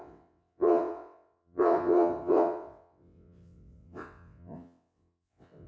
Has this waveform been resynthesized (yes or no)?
yes